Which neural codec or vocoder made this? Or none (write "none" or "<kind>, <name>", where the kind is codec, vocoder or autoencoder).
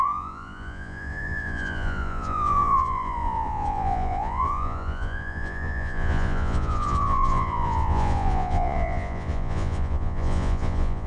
vocoder, Vocos